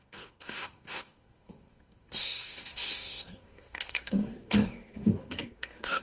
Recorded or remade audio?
remade